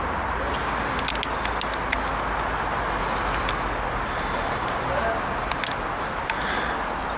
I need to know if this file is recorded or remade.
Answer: recorded